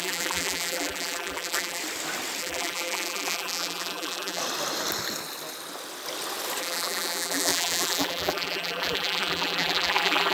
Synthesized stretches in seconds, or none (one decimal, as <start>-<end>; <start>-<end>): 0.0-1.8; 2.4-4.4; 6.6-10.3